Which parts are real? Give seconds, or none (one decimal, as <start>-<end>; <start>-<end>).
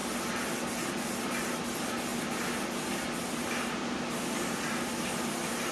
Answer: 0.0-5.7